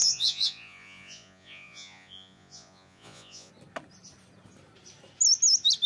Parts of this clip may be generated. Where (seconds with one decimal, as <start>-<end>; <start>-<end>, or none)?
0.0-3.5